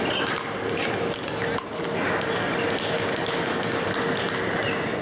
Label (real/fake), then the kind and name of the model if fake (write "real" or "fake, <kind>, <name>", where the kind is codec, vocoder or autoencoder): real